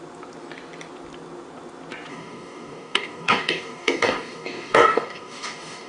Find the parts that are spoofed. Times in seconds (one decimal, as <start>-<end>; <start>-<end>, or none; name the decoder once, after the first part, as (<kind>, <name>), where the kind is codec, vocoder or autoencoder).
2.1-5.9 (codec, DAC)